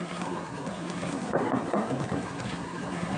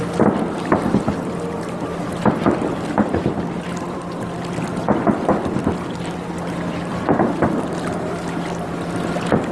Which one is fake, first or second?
first